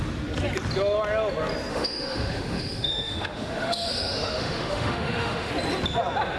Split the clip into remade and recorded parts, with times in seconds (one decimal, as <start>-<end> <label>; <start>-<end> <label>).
0.0-1.7 recorded; 1.7-5.5 remade; 5.5-6.4 recorded